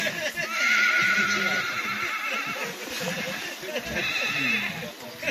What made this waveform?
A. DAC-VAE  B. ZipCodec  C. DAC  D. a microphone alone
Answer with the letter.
D